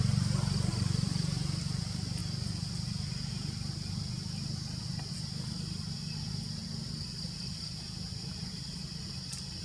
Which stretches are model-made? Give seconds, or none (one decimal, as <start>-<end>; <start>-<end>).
0.7-1.8